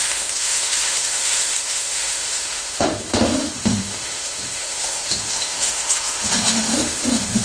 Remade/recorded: remade